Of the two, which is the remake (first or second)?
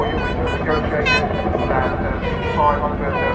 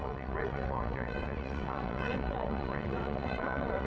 second